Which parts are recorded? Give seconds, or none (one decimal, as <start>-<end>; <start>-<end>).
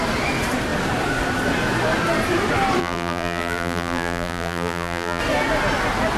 0.0-2.8; 5.2-6.2